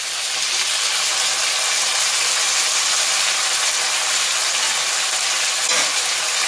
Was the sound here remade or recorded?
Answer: recorded